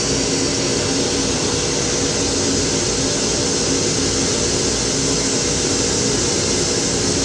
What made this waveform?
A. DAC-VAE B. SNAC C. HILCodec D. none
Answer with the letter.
D